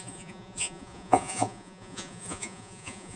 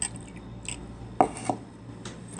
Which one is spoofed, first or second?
first